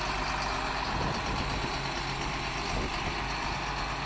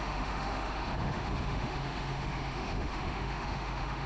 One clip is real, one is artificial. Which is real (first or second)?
first